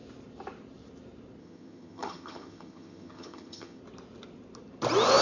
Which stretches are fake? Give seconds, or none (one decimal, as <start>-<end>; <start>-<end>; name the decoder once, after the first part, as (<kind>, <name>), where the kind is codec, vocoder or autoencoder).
1.4-3.8 (vocoder, HiFi-GAN)